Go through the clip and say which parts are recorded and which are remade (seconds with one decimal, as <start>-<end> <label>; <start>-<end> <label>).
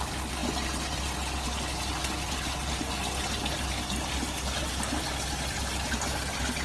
0.0-6.6 recorded